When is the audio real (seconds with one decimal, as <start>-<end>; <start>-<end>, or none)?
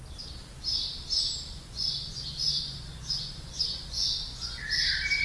0.0-1.5; 4.6-5.2